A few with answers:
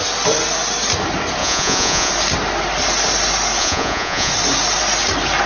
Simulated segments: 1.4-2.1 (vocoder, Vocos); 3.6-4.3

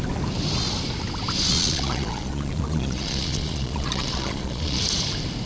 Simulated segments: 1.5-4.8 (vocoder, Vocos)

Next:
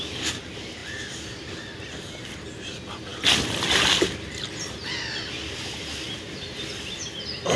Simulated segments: none

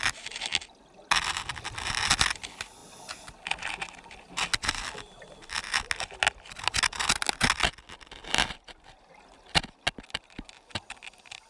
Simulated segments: none

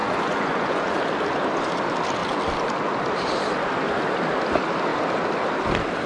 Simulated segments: 0.0-1.0 (vocoder, Vocos)

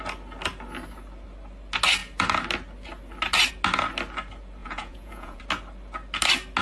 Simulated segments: 4.6-5.4 (vocoder, Vocos)

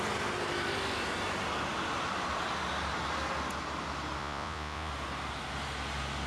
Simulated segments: 4.2-4.9 (vocoder, Vocos)